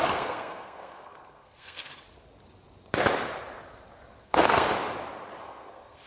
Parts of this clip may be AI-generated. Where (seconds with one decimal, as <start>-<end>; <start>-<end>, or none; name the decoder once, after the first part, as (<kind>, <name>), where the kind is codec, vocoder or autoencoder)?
0.0-1.9 (codec, SNAC); 4.2-4.7; 5.4-6.1